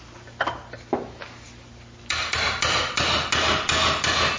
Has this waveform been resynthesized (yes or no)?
no